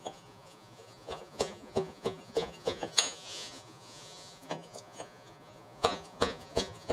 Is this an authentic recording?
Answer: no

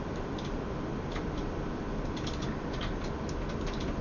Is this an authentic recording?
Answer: yes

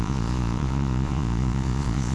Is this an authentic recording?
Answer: no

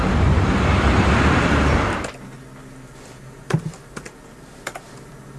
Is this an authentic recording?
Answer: yes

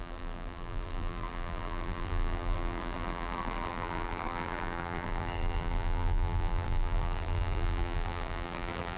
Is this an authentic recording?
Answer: no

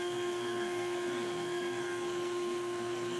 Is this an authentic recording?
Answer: no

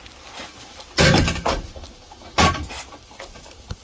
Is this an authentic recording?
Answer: yes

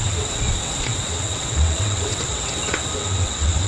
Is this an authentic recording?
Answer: no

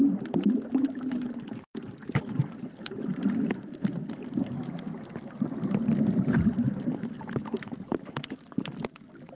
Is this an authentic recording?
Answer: yes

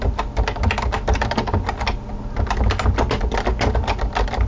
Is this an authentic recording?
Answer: yes